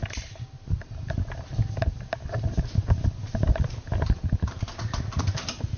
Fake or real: real